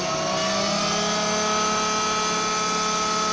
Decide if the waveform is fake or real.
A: real